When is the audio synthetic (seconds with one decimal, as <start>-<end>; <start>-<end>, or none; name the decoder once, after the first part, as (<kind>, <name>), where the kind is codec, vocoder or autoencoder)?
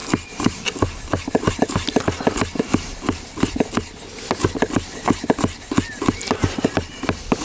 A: none